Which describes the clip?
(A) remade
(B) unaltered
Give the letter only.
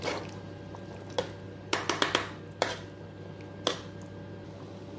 B